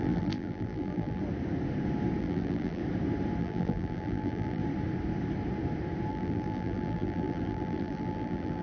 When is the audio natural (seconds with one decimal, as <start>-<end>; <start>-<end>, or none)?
1.2-2.2; 2.8-3.4; 4.6-6.1